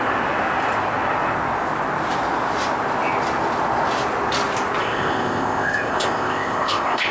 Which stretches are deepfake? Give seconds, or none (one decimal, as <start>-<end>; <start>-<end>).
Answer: 4.8-7.1

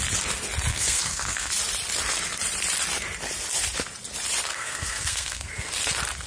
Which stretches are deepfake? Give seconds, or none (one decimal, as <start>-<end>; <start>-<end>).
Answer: 0.7-1.5; 4.5-5.7

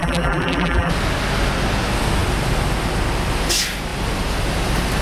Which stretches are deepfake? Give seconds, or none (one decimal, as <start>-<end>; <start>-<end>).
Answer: 0.0-0.9

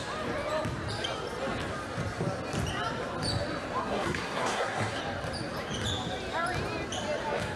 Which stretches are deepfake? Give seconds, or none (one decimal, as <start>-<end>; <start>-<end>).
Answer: 3.8-5.0

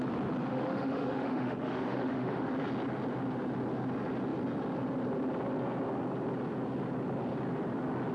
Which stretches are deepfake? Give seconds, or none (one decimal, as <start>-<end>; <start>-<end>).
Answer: 0.5-2.5

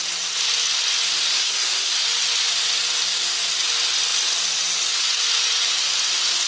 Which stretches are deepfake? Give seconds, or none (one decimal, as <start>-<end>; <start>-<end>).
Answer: 1.3-1.9